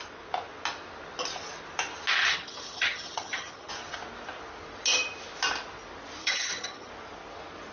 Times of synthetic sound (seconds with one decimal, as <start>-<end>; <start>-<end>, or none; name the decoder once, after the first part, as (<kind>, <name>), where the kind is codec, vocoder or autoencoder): 2.2-3.7 (vocoder, HiFi-GAN); 6.2-6.9